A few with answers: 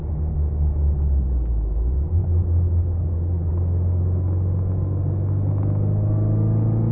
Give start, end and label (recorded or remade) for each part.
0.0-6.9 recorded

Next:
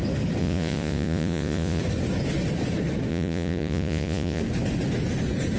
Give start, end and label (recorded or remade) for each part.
0.0-0.4 recorded; 0.4-1.8 remade; 1.8-3.1 recorded; 3.1-4.4 remade; 4.4-5.6 recorded

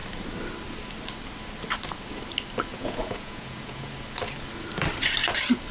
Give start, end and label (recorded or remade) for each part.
0.0-2.7 recorded; 2.7-3.9 remade; 3.9-5.7 recorded

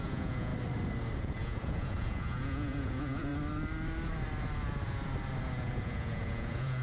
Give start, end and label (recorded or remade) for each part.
0.0-0.5 remade; 0.5-1.2 recorded; 1.2-3.3 remade; 3.3-5.4 recorded; 5.4-6.8 remade

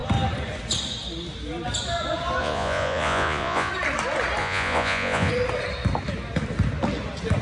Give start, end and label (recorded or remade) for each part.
0.0-2.4 recorded; 2.4-3.7 remade; 3.7-4.4 recorded; 4.4-5.3 remade; 5.3-7.4 recorded

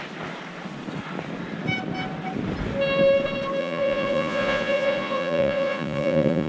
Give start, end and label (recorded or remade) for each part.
0.0-3.6 recorded; 3.6-6.5 remade

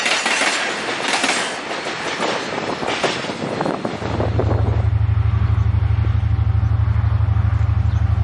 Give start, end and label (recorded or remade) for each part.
0.0-8.2 recorded